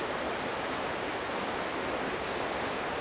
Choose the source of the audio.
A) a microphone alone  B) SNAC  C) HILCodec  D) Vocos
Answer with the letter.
A